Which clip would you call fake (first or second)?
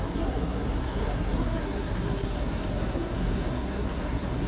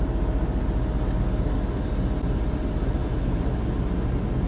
first